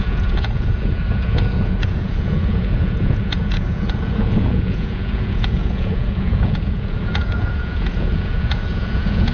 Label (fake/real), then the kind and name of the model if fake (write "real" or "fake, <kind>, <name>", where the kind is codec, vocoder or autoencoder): fake, vocoder, Vocos